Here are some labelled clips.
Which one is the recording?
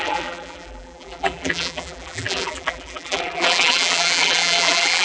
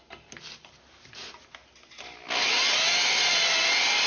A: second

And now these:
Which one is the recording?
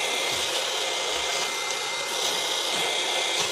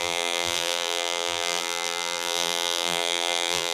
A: first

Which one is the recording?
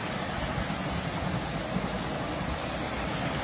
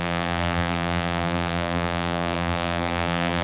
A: first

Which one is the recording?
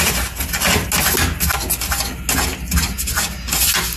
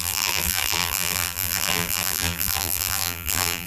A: first